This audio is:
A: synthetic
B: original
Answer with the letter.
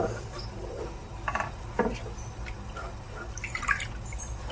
B